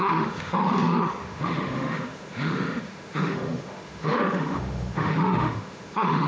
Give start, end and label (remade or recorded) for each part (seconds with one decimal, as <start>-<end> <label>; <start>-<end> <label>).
0.0-6.3 remade